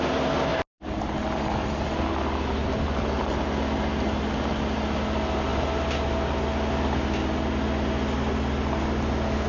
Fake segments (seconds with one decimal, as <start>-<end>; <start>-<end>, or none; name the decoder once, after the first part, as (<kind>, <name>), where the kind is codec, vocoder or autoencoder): none